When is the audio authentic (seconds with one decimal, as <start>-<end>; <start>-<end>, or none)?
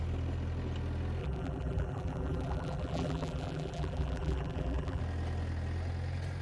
0.0-1.2; 5.0-6.4